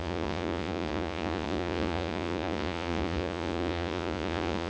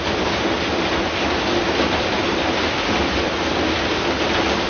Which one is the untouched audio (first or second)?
second